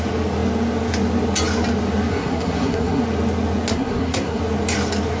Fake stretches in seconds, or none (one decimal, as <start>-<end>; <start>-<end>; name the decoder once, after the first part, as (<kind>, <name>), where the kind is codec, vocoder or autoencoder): 2.1-3.0 (codec, SNAC); 3.7-4.4